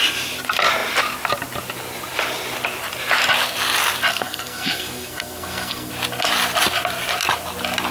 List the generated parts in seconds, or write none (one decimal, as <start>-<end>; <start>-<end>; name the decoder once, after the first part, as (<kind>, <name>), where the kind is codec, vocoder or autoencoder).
4.1-5.9 (codec, SNAC)